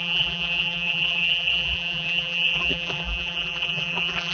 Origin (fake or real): fake